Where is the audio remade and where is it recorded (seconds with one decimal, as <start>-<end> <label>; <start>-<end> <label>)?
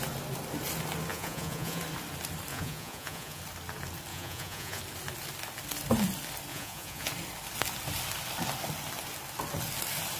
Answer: 0.0-1.1 recorded; 1.1-1.8 remade; 1.8-2.5 recorded; 2.5-3.4 remade; 3.4-4.1 recorded; 4.1-4.8 remade; 4.8-6.5 recorded; 6.5-7.1 remade; 7.1-10.2 recorded